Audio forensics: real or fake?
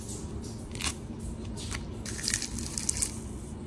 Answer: real